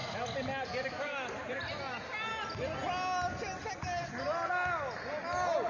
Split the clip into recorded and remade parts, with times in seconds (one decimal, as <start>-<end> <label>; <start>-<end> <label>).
0.0-5.7 recorded

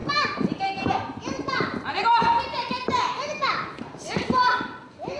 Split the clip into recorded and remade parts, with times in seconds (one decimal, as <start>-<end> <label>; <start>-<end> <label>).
0.0-1.9 recorded; 1.9-5.2 remade